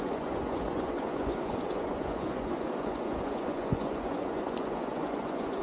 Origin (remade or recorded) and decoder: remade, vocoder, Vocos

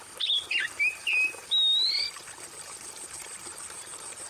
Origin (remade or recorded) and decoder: recorded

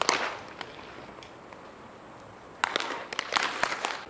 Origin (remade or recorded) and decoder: recorded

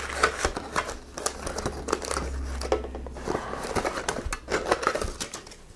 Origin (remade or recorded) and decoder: recorded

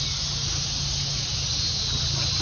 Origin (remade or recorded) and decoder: recorded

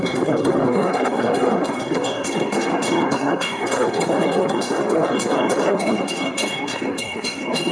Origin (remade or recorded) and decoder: remade, codec, SNAC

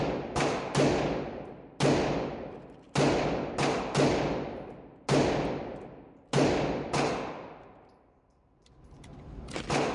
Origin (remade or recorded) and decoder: recorded